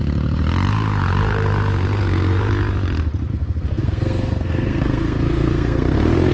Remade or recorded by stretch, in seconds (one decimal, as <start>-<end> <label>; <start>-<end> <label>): 0.0-0.7 recorded; 0.7-2.5 remade; 2.5-3.3 recorded; 3.3-6.3 remade